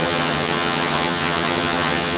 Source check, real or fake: fake